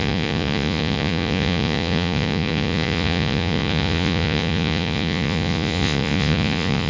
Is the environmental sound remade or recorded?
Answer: remade